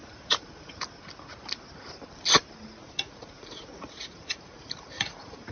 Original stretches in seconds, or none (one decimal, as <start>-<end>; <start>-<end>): 0.8-2.8

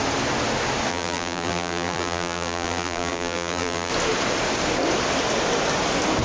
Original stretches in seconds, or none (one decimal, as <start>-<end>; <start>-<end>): 0.0-0.9; 3.9-6.2

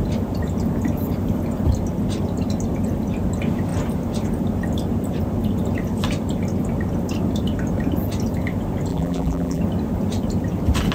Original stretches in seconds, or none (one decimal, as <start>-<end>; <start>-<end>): 0.0-8.9; 9.6-10.9

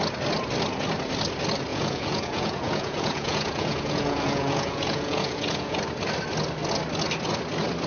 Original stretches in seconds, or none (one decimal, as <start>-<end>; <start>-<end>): 0.0-1.7; 5.8-7.9

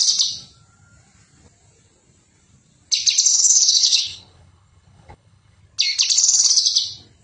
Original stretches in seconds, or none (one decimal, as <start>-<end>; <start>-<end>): 0.0-3.3; 5.6-7.2